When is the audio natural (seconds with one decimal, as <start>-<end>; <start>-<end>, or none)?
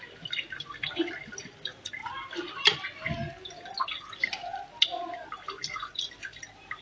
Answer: 0.0-6.8